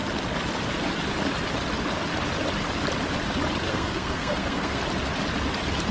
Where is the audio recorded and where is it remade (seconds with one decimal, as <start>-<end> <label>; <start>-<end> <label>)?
0.0-3.7 recorded; 3.7-4.8 remade; 4.8-5.9 recorded